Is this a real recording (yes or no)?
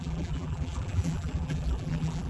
no